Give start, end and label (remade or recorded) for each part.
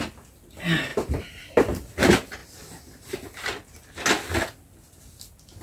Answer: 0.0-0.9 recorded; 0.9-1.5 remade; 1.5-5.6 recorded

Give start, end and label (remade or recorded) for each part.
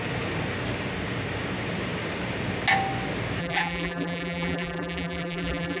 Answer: 0.0-3.4 recorded; 3.4-5.8 remade